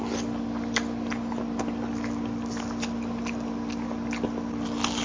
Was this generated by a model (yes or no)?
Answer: no